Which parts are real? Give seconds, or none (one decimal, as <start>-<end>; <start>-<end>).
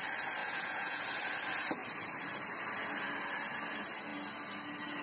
0.0-0.4; 1.0-5.0